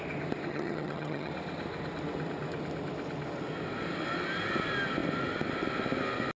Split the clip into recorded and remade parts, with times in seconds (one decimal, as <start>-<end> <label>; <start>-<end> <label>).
0.0-0.5 recorded; 0.5-1.3 remade; 1.3-6.4 recorded